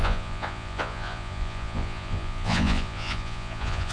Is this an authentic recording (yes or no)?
no